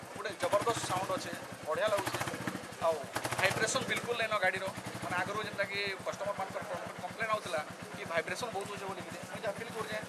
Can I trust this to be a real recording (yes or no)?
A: yes